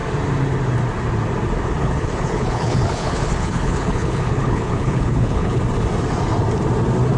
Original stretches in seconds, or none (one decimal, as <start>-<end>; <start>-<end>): 0.0-1.8; 5.6-7.2